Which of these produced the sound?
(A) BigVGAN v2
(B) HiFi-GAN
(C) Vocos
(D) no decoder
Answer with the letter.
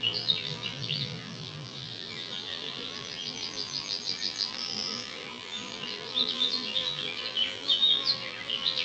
A